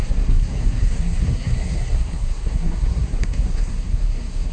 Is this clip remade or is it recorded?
remade